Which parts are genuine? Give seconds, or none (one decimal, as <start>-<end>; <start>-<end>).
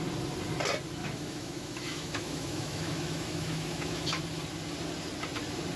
0.0-1.0; 4.2-5.8